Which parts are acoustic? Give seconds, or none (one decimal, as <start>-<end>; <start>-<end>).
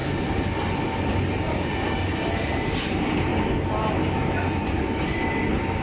0.0-5.8